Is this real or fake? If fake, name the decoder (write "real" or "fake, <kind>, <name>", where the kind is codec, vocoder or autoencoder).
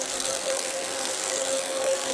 fake, codec, SNAC